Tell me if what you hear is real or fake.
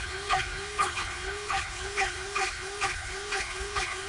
fake